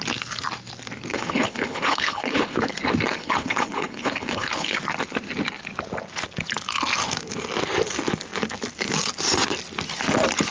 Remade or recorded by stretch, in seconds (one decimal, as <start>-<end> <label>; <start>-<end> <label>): 0.0-1.1 recorded; 1.1-2.7 remade; 2.7-3.1 recorded; 3.1-4.8 remade; 4.8-10.5 recorded